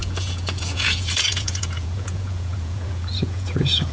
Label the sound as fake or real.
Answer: fake